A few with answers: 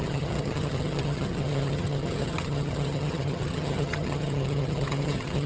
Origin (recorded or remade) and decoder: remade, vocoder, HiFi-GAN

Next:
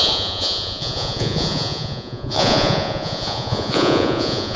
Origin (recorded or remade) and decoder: remade, vocoder, Vocos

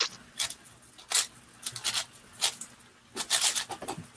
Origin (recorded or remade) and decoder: recorded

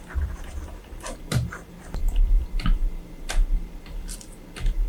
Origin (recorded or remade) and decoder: remade, vocoder, BigVGAN v2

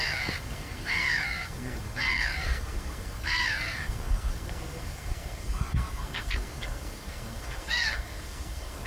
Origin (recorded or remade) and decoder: remade, codec, SNAC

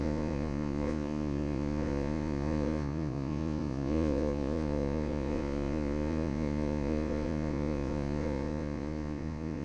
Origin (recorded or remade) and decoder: remade, vocoder, Vocos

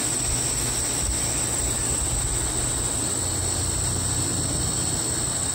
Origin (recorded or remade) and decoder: recorded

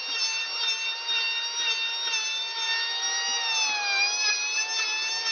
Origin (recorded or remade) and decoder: recorded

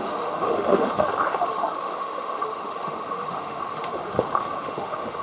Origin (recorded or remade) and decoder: remade, autoencoder, DAC-VAE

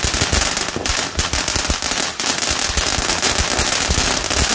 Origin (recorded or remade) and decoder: recorded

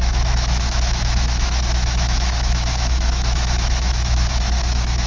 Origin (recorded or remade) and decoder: remade, autoencoder, DAC-VAE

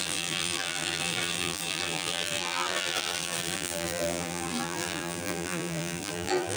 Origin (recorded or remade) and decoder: remade, vocoder, BigVGAN v2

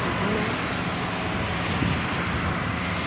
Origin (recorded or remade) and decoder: recorded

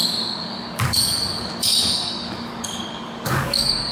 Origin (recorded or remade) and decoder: remade, codec, DAC